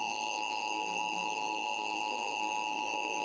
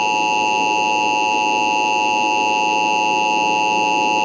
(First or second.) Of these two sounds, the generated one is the first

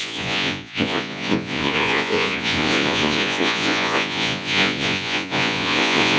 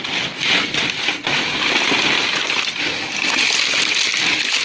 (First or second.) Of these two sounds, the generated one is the first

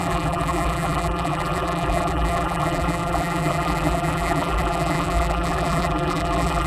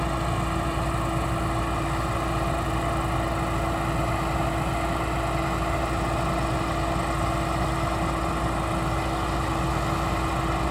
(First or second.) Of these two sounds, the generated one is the first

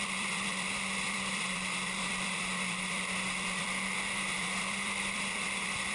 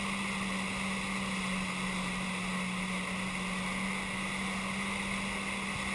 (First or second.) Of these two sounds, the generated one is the first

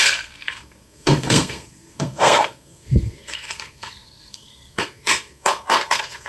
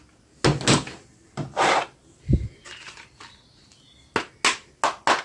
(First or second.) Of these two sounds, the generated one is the first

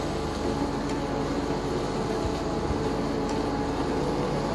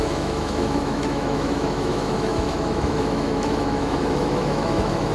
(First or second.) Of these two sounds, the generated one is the second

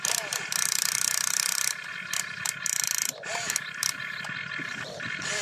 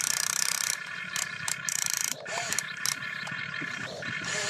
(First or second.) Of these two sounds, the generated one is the second